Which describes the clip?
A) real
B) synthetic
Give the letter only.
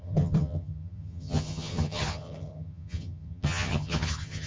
B